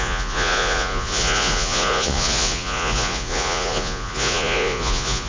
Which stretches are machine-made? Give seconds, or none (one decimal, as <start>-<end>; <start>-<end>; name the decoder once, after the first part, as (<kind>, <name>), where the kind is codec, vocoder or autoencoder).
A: 0.0-5.3 (vocoder, Vocos)